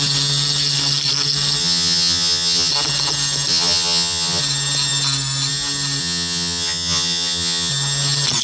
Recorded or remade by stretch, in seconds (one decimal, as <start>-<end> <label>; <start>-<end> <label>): 0.0-1.6 recorded; 1.6-2.7 remade; 2.7-3.5 recorded; 3.5-4.4 remade; 4.4-6.0 recorded; 6.0-7.7 remade; 7.7-8.4 recorded